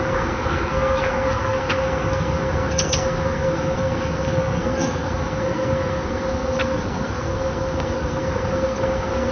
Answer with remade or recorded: remade